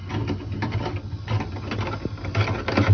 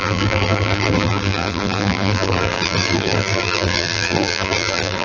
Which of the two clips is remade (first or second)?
second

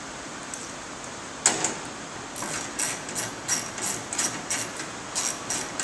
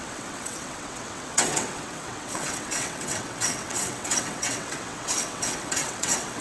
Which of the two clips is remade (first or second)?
second